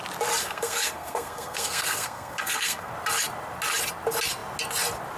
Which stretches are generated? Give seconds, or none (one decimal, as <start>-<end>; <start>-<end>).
0.4-2.9